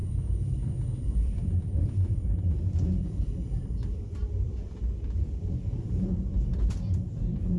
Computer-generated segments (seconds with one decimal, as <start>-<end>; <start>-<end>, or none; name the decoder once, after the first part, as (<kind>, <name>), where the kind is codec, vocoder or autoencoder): 0.0-7.6 (vocoder, BigVGAN v2)